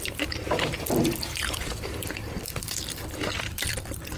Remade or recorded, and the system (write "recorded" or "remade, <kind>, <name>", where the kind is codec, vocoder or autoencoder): remade, vocoder, BigVGAN v2